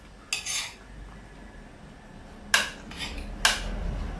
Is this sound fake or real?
real